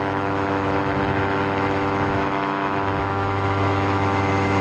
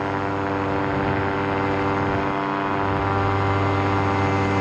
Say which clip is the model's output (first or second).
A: first